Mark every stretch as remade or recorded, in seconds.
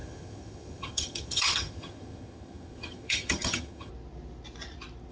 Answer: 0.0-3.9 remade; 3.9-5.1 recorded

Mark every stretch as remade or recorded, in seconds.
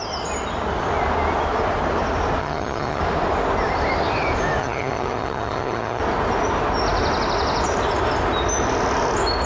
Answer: 0.0-2.4 recorded; 2.4-3.0 remade; 3.0-4.6 recorded; 4.6-6.0 remade; 6.0-9.5 recorded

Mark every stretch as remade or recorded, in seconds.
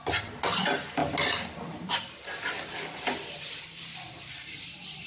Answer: 0.0-5.1 recorded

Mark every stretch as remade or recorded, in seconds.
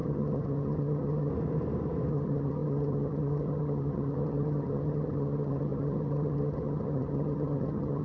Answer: 0.0-1.3 remade; 1.3-2.1 recorded; 2.1-8.0 remade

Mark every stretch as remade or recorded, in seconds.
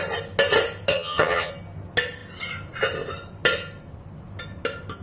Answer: 0.0-0.9 recorded; 0.9-1.5 remade; 1.5-5.0 recorded